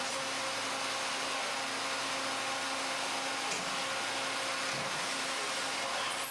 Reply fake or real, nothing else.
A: real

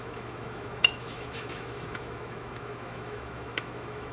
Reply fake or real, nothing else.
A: fake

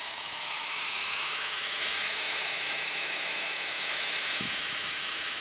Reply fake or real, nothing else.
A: fake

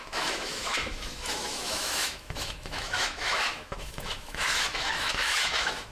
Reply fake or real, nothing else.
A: fake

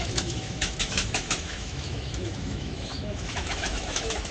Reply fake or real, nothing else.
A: fake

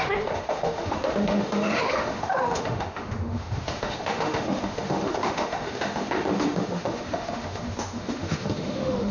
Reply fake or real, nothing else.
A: fake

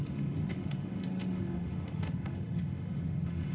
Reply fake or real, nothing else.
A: fake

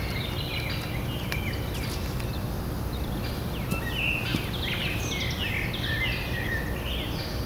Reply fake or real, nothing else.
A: real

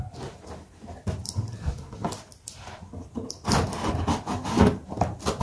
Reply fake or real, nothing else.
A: real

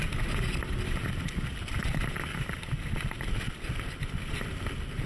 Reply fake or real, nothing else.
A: real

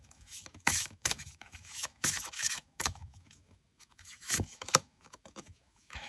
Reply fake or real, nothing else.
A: fake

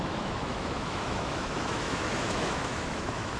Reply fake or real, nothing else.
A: fake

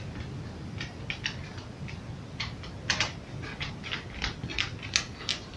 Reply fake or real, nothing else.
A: real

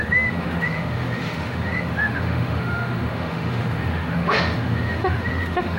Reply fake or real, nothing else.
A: fake